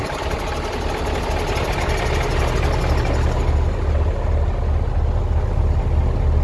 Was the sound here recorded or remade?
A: recorded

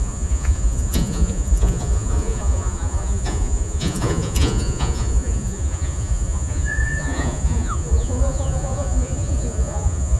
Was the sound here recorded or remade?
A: remade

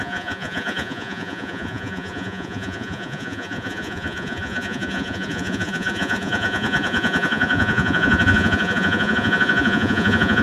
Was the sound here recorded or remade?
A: remade